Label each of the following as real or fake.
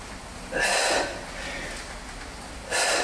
real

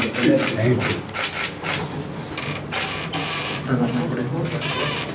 real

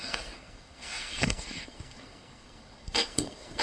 fake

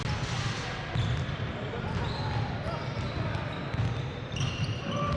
real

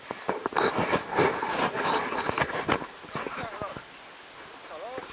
real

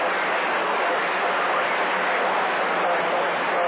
real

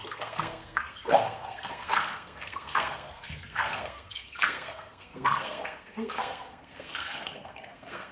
fake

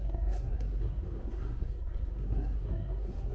fake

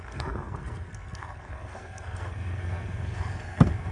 fake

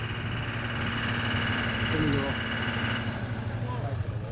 real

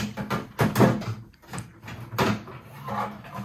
real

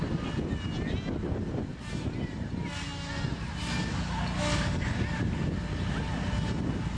real